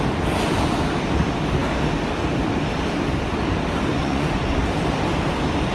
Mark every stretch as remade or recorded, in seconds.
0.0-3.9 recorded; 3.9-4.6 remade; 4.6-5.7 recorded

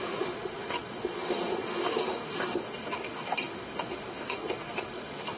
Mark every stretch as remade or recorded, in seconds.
0.0-5.4 remade

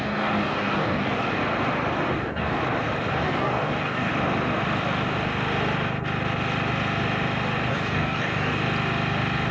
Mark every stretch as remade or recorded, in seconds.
0.0-1.4 remade; 1.4-2.1 recorded; 2.1-2.6 remade; 2.6-3.1 recorded; 3.1-4.1 remade; 4.1-7.7 recorded; 7.7-8.6 remade; 8.6-9.5 recorded

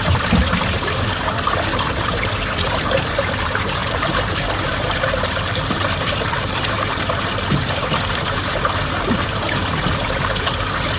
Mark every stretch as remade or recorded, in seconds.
0.0-11.0 remade

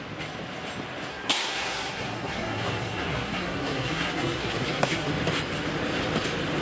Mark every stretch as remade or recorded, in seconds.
0.0-1.1 recorded; 1.1-5.1 remade; 5.1-6.6 recorded

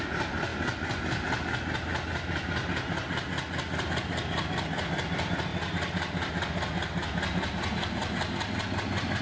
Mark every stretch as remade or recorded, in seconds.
0.0-9.2 recorded